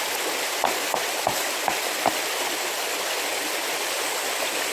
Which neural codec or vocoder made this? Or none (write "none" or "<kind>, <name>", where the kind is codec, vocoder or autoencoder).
none